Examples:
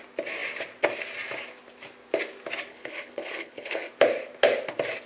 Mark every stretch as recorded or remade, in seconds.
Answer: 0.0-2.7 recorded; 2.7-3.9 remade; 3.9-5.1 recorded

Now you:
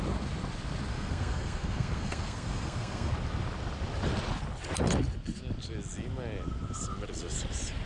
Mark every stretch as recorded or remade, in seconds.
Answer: 0.0-0.9 recorded; 0.9-3.1 remade; 3.1-7.9 recorded

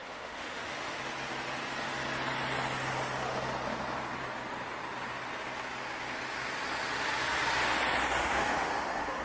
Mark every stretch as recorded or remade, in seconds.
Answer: 0.0-1.0 remade; 1.0-8.2 recorded; 8.2-9.2 remade

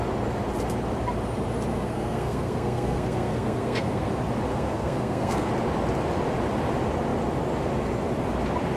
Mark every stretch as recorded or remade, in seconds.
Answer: 0.0-1.7 recorded; 1.7-4.1 remade; 4.1-4.5 recorded; 4.5-5.5 remade; 5.5-8.8 recorded

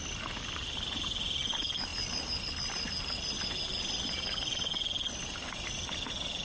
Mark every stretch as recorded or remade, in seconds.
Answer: 0.0-6.4 recorded

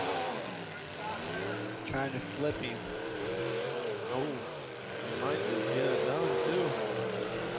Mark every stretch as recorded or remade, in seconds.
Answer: 0.0-7.6 recorded

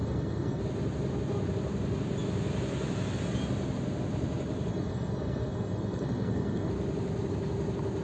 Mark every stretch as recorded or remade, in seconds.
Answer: 0.0-0.6 remade; 0.6-4.7 recorded; 4.7-6.7 remade; 6.7-8.0 recorded

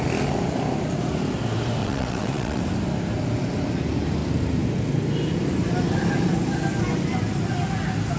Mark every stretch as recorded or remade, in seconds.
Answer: 0.0-1.8 recorded; 1.8-2.6 remade; 2.6-8.2 recorded